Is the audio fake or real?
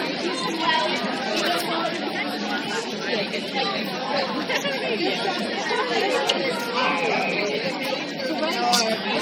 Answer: fake